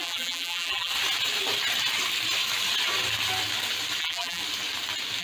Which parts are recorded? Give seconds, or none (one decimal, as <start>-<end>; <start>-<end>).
0.9-4.0; 4.4-5.2